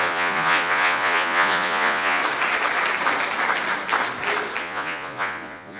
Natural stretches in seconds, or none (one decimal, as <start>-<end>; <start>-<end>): 2.2-4.6